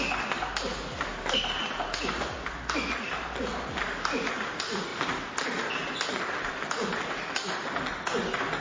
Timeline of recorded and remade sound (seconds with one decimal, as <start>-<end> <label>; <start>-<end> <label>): 0.0-8.6 recorded